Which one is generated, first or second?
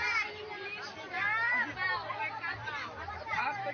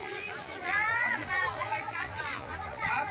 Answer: second